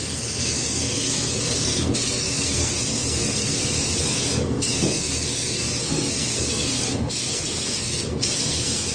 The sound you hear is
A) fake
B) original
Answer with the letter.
A